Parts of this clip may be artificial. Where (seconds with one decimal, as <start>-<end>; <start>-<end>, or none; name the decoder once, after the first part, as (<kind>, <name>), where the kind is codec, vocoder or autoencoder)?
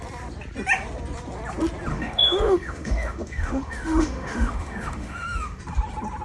1.9-5.6 (autoencoder, DAC-VAE)